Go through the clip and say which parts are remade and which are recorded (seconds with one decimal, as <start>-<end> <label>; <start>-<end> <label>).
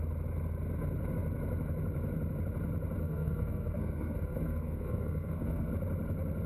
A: 0.0-3.0 recorded; 3.0-5.7 remade; 5.7-6.5 recorded